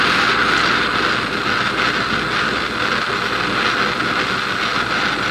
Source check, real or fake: real